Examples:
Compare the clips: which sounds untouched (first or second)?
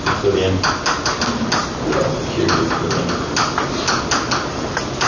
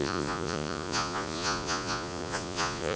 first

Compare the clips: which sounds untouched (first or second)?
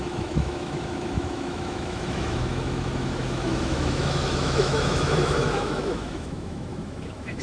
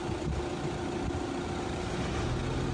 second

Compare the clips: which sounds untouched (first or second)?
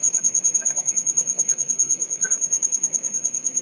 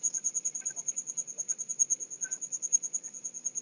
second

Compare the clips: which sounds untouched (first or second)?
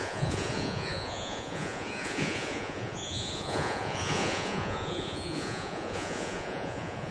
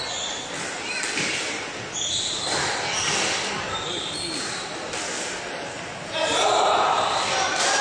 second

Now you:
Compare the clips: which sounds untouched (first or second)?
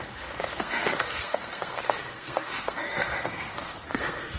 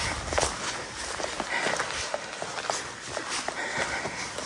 second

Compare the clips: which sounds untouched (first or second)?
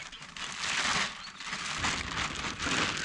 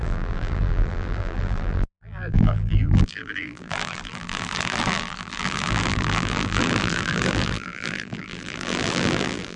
first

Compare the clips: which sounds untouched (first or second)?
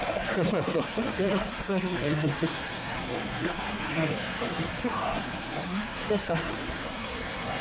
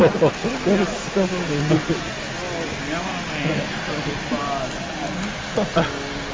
second